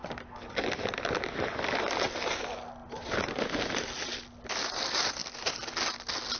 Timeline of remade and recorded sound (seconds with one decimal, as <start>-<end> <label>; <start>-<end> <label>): 0.0-6.4 recorded